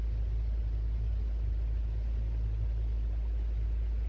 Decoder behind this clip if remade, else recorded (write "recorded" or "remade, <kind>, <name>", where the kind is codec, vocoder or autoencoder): recorded